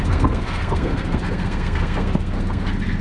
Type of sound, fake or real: fake